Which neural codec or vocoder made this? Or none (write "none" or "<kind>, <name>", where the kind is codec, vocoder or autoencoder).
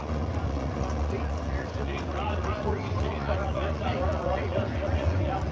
vocoder, Vocos